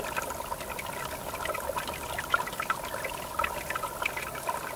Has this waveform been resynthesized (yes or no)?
no